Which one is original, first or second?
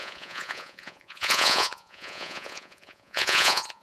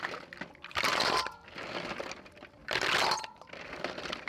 second